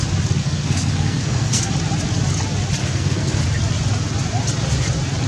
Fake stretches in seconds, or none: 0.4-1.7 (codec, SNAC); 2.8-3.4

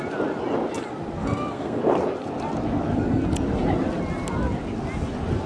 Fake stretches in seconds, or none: 1.2-1.8 (codec, SNAC)

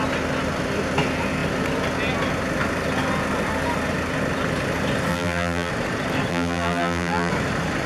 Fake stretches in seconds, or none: 5.1-5.7 (vocoder, BigVGAN v2); 6.3-7.3

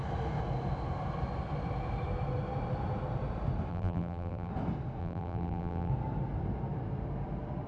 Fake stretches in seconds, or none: 3.7-4.5 (vocoder, BigVGAN v2); 5.0-5.9

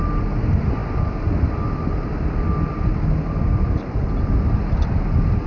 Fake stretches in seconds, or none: none

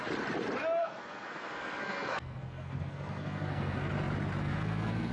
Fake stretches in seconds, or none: 0.8-3.9 (codec, SNAC); 4.4-5.1

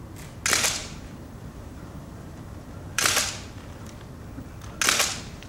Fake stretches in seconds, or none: 0.8-4.1 (vocoder, BigVGAN v2)